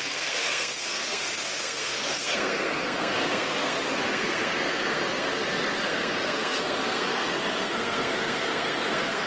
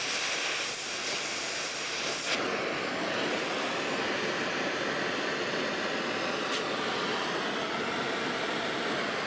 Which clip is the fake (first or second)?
first